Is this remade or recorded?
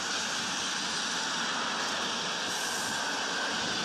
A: recorded